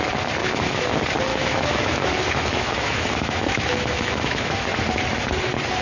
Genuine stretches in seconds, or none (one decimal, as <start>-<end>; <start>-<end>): 0.0-0.4; 0.9-1.3; 4.8-5.8

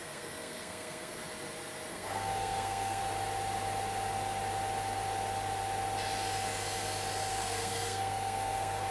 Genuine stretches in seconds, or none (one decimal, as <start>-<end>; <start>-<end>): 1.2-1.9; 3.0-7.3

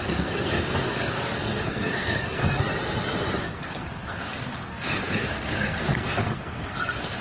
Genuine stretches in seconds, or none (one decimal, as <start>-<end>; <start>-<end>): 2.4-3.4

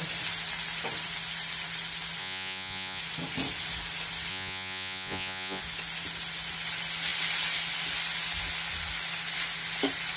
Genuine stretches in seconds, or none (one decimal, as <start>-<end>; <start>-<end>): 0.0-2.2; 3.0-4.3; 5.6-10.2